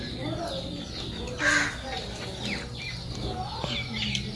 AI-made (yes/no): no